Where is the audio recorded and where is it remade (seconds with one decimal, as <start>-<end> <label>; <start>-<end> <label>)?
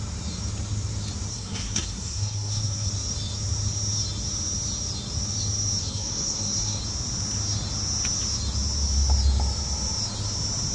0.0-1.3 recorded; 1.3-2.9 remade; 2.9-5.8 recorded; 5.8-6.8 remade; 6.8-10.7 recorded